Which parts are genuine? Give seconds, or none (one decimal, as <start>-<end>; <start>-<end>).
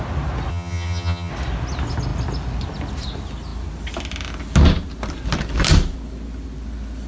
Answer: 0.0-0.5; 1.3-7.1